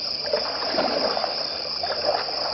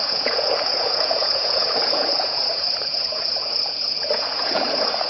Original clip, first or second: first